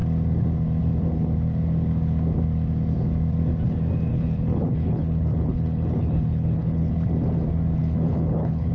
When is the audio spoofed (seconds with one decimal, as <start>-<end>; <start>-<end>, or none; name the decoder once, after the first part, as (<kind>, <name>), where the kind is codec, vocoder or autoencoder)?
4.1-6.9 (codec, HILCodec); 7.8-8.7